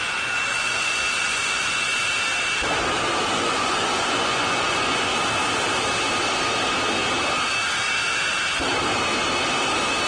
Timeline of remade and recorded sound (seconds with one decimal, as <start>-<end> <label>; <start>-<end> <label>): 0.0-1.9 remade; 1.9-3.3 recorded; 3.3-5.1 remade; 5.1-10.1 recorded